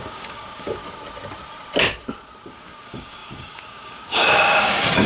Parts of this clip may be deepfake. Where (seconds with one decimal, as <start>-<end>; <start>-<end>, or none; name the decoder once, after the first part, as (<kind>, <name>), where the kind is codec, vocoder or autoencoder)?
0.0-0.8 (codec, DAC); 2.5-5.1